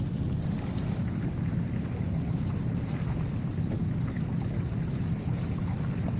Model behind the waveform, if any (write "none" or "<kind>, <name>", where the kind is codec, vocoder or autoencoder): none